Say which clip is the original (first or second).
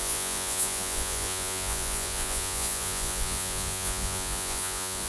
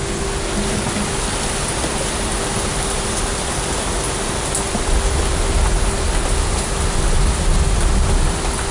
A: second